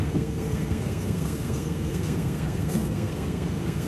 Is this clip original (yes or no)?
no